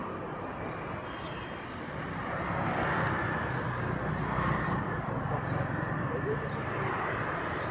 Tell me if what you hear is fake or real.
real